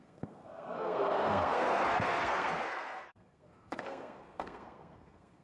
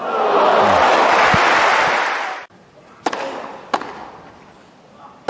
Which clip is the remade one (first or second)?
first